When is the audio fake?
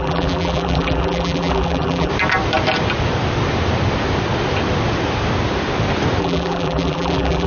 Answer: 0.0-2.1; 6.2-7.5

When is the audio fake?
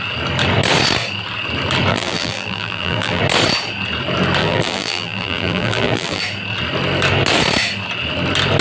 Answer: 1.9-3.2; 4.4-6.2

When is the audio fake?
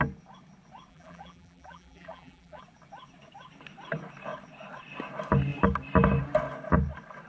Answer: 0.9-2.6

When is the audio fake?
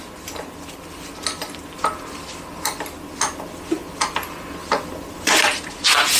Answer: 4.6-5.3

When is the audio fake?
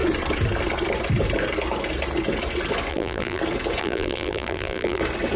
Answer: 2.9-3.4; 3.8-5.0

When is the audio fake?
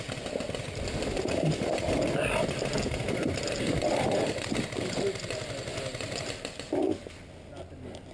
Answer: 5.7-7.1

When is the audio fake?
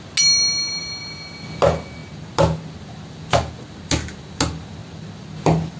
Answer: 4.8-5.8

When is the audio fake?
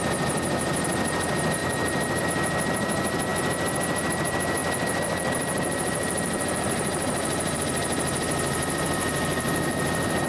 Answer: 1.6-2.2; 4.6-7.6